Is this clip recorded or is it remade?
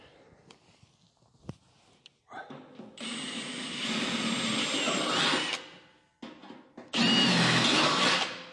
recorded